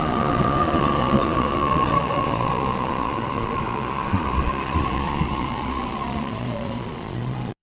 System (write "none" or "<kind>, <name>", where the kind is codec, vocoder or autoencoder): vocoder, Vocos